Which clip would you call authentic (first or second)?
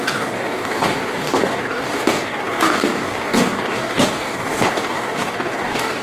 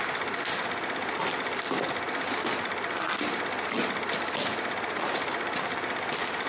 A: second